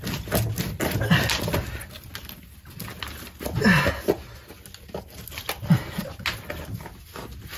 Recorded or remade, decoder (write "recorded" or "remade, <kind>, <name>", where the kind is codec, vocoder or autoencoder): recorded